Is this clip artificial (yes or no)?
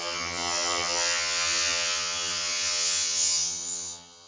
yes